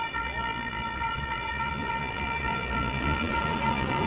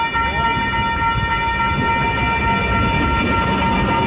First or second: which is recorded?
second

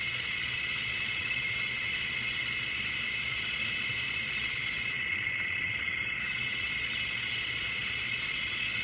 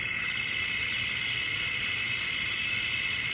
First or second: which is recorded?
second